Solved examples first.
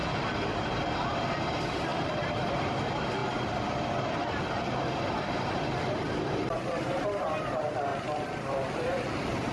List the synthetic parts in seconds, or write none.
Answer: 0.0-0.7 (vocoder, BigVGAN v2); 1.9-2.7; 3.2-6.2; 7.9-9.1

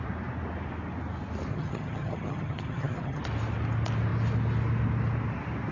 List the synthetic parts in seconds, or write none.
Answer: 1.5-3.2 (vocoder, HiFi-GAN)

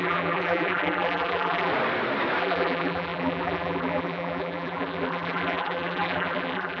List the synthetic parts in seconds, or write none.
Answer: 0.0-1.7 (vocoder, BigVGAN v2); 2.4-6.8

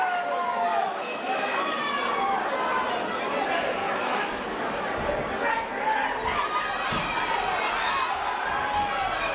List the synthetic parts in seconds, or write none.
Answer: 0.7-1.8 (autoencoder, DAC-VAE); 3.8-4.8